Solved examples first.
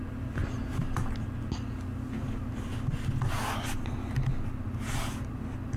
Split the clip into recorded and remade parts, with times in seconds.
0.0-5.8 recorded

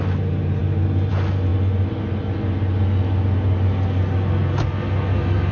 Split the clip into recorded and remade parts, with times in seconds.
0.0-5.5 recorded